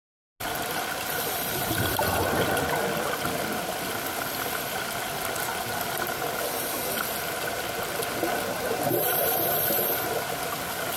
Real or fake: real